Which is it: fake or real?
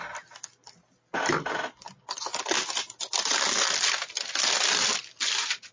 real